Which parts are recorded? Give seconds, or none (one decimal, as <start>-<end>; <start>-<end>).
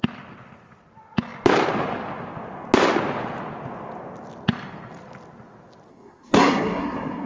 0.0-5.9